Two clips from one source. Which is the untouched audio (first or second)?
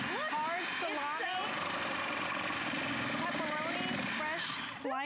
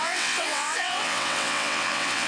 first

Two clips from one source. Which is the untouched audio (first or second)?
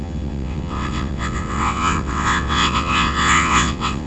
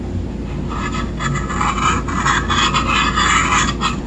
second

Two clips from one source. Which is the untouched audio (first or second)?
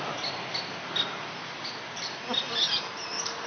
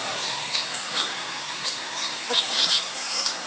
first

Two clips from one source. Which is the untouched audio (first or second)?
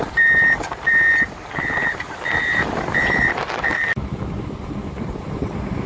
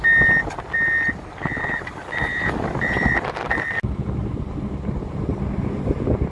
second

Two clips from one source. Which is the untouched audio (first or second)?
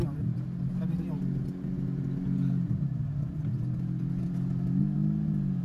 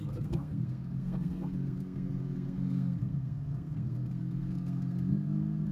first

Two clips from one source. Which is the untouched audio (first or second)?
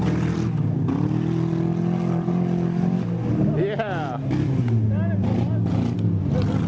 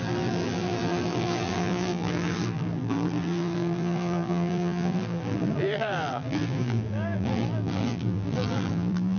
first